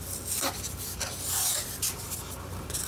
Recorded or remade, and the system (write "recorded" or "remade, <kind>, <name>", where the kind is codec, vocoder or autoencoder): remade, vocoder, BigVGAN v2